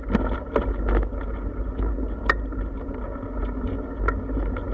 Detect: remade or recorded recorded